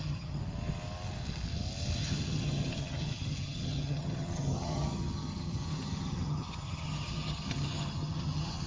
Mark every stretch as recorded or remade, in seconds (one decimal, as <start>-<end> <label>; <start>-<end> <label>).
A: 0.0-0.4 remade; 0.4-2.0 recorded; 2.0-8.7 remade